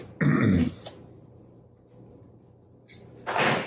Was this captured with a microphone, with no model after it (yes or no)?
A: yes